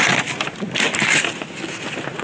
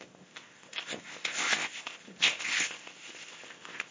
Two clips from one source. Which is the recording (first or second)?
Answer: first